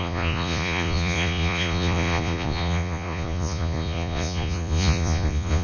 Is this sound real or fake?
fake